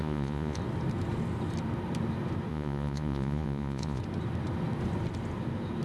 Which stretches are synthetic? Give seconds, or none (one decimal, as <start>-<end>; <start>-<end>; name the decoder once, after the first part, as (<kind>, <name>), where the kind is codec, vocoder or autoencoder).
0.0-0.6 (vocoder, Vocos); 2.5-4.0